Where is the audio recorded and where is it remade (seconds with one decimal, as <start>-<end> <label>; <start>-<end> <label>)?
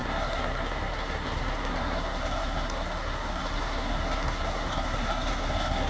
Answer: 0.0-5.9 remade